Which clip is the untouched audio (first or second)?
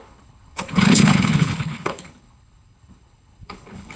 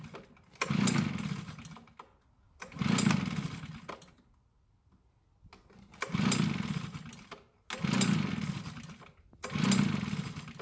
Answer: second